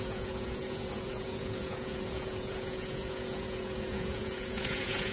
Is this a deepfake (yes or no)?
yes